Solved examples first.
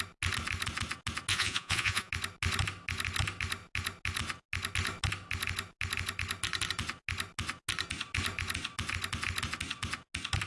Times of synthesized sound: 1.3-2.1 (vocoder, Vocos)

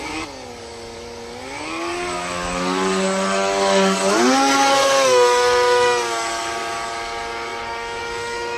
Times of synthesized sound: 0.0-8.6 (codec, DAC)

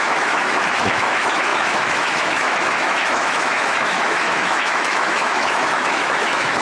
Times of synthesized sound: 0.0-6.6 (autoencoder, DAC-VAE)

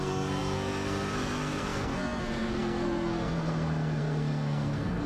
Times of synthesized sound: 0.0-5.1 (codec, SNAC)

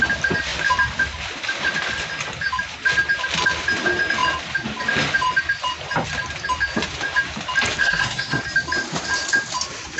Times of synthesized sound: 7.8-8.4 (codec, SNAC)

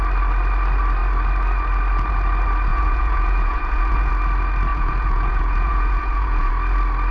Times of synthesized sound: 2.7-4.1 (vocoder, Vocos); 4.7-6.5